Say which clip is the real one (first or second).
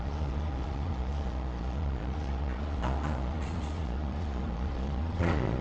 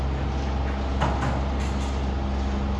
second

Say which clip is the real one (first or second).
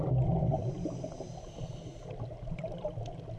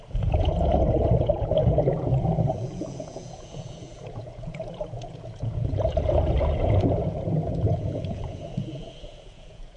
first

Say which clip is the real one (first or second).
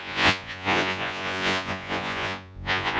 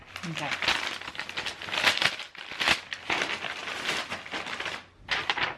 second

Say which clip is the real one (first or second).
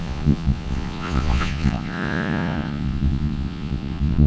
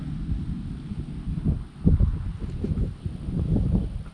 second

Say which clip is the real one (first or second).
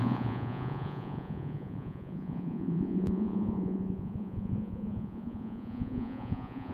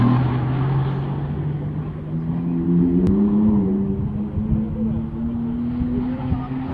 second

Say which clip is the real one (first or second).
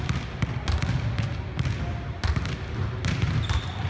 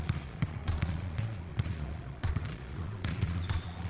first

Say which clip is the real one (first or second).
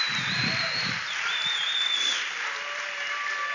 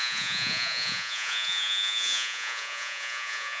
first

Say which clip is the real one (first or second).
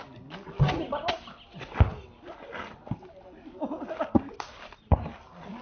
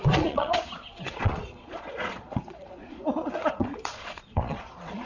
first